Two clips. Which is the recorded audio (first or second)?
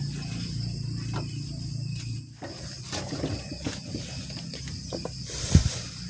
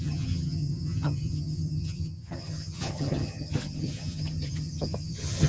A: first